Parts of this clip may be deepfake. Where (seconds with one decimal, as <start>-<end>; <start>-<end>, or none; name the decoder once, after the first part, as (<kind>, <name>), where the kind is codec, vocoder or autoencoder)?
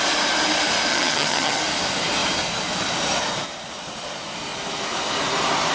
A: 0.9-1.6 (vocoder, HiFi-GAN)